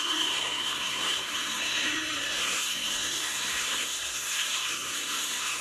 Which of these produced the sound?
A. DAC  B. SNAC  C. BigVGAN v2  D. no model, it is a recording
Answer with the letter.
B